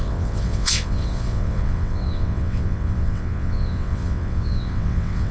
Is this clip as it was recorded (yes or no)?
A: no